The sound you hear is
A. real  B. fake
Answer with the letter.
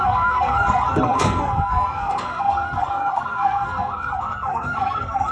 B